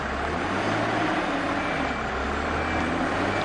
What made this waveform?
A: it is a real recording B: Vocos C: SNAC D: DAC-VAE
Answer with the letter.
A